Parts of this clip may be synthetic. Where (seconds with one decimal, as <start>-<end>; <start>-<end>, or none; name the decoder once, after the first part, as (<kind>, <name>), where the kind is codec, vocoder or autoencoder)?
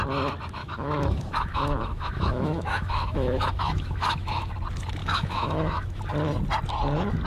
0.6-4.5 (autoencoder, DAC-VAE); 5.0-6.0